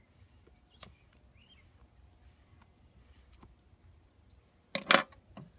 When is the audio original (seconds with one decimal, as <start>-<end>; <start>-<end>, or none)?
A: 0.0-5.6